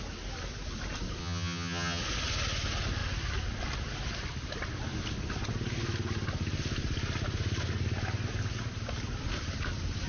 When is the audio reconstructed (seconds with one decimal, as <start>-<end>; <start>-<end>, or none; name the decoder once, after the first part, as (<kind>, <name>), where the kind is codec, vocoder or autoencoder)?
1.2-2.0 (vocoder, HiFi-GAN)